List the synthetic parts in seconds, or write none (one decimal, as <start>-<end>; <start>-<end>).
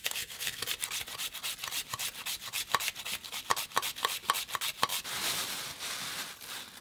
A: 0.0-0.7